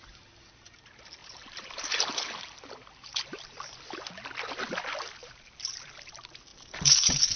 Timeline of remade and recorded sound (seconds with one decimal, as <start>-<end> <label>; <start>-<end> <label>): 0.0-1.2 recorded; 1.2-3.9 remade; 3.9-5.2 recorded; 5.2-5.9 remade; 5.9-6.5 recorded; 6.5-7.4 remade